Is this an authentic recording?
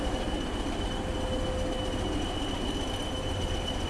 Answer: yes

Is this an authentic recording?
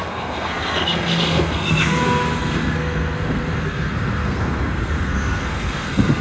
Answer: no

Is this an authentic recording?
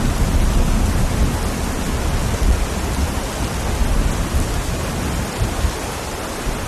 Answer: yes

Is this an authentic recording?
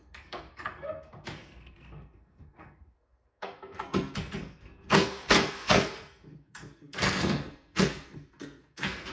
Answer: no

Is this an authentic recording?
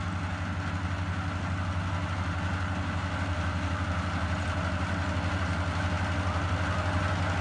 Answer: yes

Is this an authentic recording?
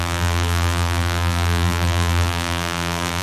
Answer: no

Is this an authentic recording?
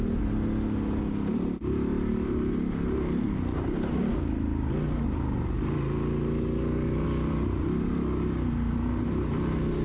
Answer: yes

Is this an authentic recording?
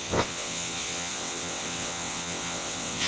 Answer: no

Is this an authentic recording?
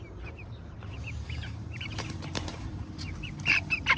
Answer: no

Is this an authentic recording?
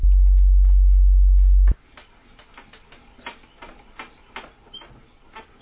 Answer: yes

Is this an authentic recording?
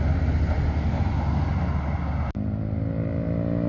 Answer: yes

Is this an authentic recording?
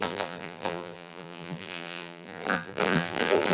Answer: no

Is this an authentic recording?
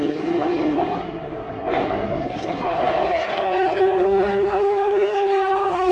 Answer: no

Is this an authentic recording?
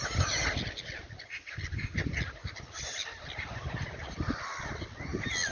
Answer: yes